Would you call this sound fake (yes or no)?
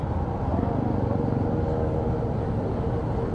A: no